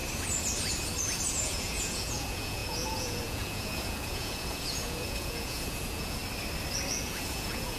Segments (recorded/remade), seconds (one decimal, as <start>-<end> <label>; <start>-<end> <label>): 0.0-1.3 recorded; 1.3-6.2 remade; 6.2-6.9 recorded; 6.9-7.8 remade